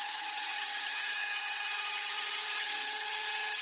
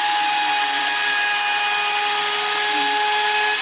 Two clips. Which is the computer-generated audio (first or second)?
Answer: first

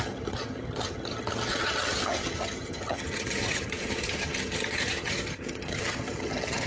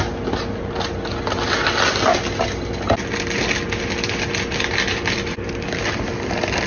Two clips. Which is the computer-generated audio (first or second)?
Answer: first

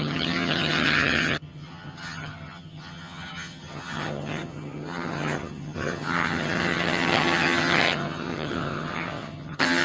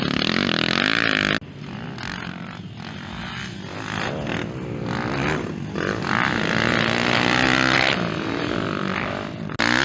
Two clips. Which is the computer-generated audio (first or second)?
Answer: first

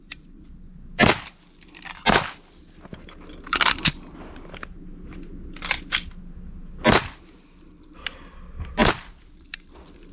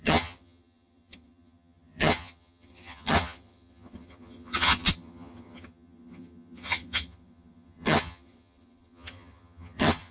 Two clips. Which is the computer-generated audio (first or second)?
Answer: second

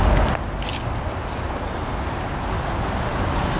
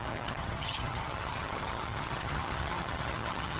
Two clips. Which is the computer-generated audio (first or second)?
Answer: second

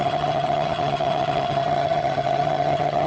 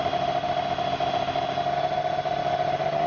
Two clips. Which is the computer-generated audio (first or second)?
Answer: first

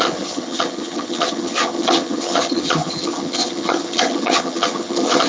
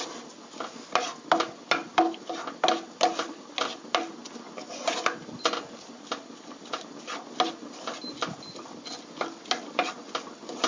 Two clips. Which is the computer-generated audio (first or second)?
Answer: first